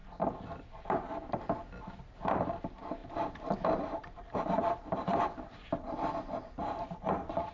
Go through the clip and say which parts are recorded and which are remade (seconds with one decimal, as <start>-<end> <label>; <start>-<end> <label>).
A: 0.0-3.0 recorded; 3.0-5.2 remade; 5.2-6.6 recorded; 6.6-7.5 remade